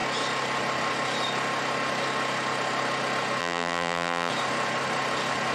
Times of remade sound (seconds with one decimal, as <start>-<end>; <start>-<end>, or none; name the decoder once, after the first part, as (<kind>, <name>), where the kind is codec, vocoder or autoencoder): 3.4-4.3 (vocoder, BigVGAN v2)